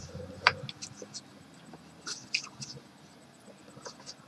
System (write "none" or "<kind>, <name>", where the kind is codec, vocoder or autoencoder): none